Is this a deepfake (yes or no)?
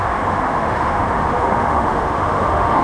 yes